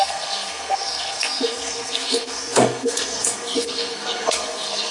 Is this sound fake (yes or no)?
yes